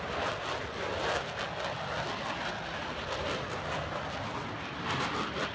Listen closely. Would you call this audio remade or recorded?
recorded